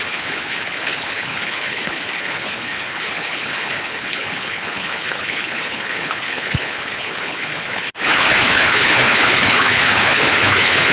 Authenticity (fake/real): fake